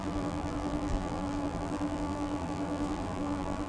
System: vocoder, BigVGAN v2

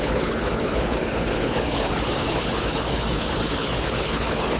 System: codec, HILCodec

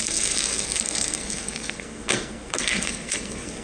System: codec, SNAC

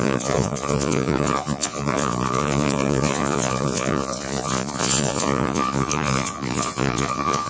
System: vocoder, Vocos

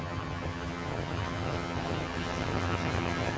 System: vocoder, HiFi-GAN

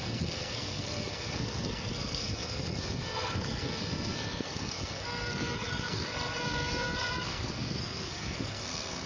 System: codec, SNAC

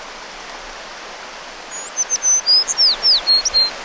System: none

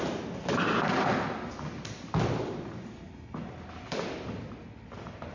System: none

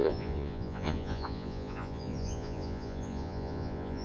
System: vocoder, Vocos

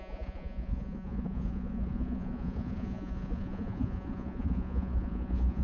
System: vocoder, Vocos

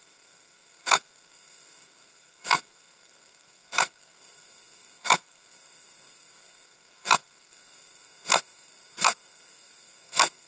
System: codec, SNAC